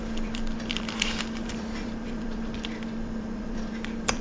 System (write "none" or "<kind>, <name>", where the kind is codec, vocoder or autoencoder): vocoder, BigVGAN v2